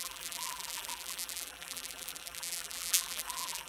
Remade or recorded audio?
remade